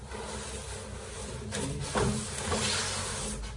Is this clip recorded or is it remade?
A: recorded